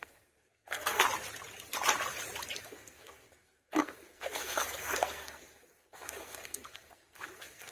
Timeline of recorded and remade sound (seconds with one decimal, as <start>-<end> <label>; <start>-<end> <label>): 0.0-1.0 remade; 1.0-2.6 recorded; 2.6-7.7 remade